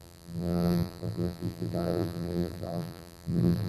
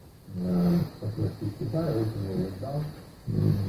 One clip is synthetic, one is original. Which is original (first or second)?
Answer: second